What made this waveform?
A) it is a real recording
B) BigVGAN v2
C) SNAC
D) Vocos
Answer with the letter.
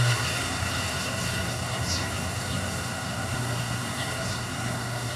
C